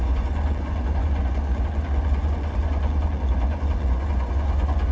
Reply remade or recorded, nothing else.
remade